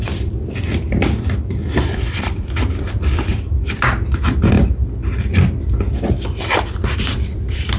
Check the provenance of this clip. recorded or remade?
remade